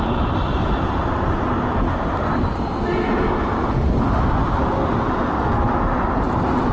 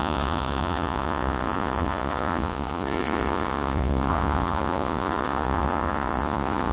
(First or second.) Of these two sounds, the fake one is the second